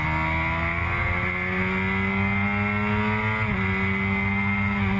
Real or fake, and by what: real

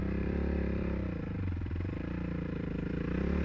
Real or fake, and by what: fake, vocoder, BigVGAN v2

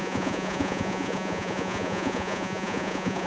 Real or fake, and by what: fake, vocoder, Vocos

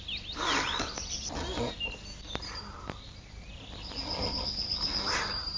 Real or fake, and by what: fake, vocoder, BigVGAN v2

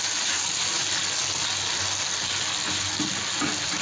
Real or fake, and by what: real